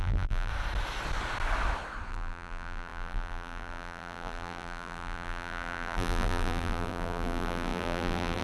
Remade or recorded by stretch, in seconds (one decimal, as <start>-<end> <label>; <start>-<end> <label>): 0.0-0.5 remade; 0.5-2.1 recorded; 2.1-8.4 remade